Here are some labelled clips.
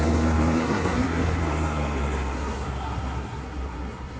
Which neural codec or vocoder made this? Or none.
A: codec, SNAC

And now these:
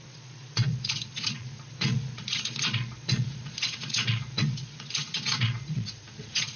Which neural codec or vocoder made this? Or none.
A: vocoder, Vocos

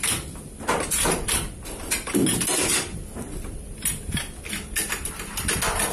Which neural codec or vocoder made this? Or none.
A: none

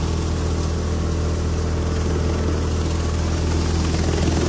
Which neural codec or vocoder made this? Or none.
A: none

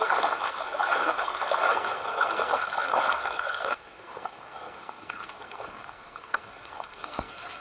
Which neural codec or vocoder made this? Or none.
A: codec, SNAC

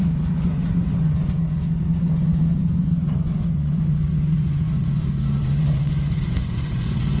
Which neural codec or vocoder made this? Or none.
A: vocoder, Vocos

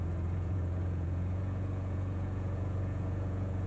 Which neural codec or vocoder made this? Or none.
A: vocoder, Vocos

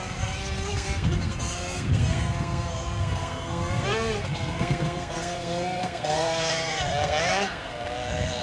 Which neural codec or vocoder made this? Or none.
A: codec, SNAC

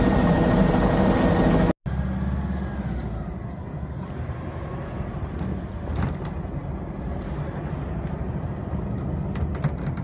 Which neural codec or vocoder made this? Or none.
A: none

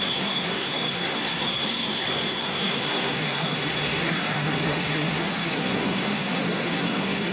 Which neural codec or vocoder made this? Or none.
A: codec, SNAC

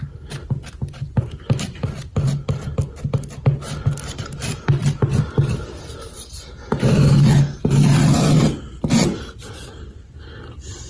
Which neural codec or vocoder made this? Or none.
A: none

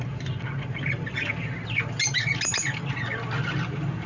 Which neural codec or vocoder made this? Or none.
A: none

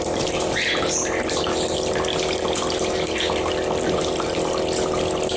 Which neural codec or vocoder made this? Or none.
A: none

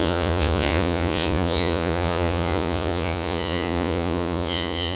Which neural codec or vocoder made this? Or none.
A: vocoder, Vocos